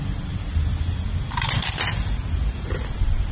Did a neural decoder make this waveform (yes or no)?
no